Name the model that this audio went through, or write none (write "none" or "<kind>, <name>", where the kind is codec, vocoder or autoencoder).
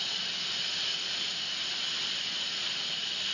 none